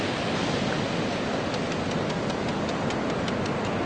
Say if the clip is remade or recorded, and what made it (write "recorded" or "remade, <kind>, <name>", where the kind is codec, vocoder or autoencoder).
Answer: recorded